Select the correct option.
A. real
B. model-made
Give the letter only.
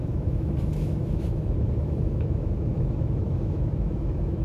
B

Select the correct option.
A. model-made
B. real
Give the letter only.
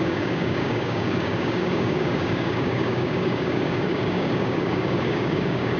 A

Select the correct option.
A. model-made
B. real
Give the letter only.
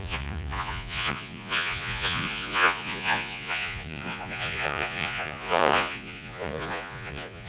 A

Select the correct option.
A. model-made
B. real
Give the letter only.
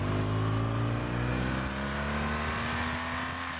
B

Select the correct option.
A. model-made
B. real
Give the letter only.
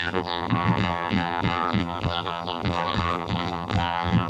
A